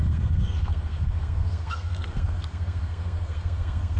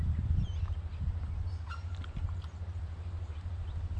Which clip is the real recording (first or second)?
second